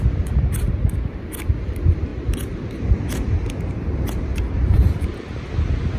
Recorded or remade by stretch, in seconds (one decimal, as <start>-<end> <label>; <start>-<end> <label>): 0.0-2.1 remade; 2.1-3.7 recorded; 3.7-4.3 remade; 4.3-5.0 recorded; 5.0-6.0 remade